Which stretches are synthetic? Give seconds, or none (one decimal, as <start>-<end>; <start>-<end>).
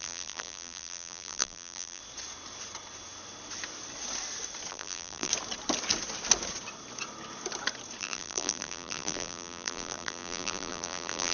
0.0-2.0; 4.7-5.3; 8.0-11.3